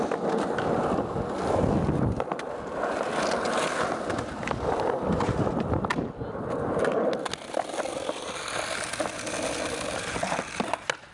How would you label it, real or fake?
real